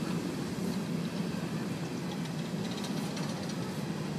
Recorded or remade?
recorded